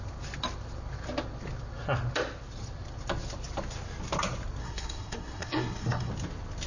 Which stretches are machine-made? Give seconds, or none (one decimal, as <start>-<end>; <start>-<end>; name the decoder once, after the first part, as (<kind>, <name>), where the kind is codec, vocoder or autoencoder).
4.6-6.1 (codec, SNAC)